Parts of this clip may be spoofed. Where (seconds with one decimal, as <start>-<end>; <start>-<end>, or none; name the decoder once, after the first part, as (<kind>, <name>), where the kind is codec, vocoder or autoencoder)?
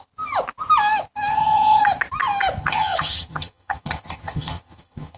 1.3-1.8 (vocoder, HiFi-GAN); 2.6-5.2